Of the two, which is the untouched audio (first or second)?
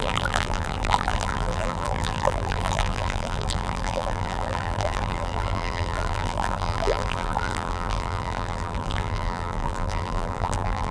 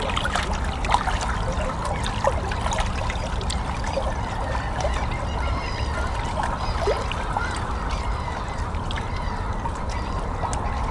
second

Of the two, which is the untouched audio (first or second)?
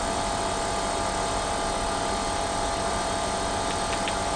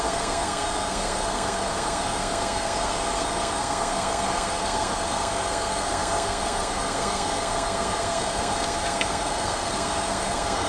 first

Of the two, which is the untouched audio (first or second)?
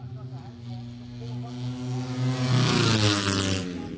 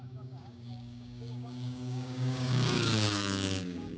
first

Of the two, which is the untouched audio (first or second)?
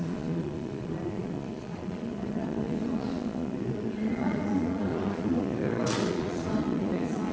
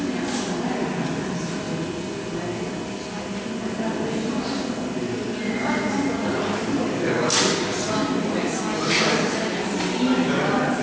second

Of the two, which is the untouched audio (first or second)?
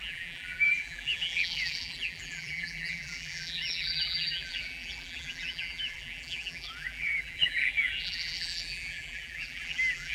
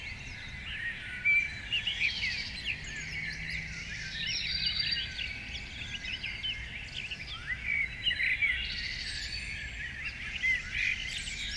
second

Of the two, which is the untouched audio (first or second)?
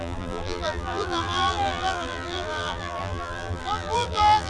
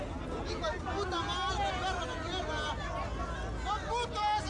second